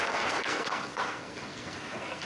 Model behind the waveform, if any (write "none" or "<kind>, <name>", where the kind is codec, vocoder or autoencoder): codec, SNAC